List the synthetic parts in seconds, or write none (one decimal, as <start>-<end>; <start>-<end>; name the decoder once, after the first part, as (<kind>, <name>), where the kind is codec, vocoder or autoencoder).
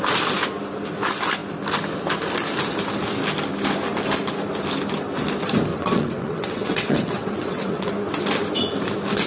5.7-7.9 (vocoder, WaveNeXt)